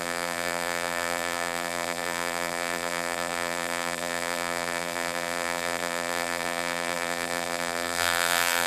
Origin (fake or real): fake